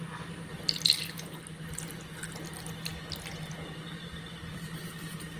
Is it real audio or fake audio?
real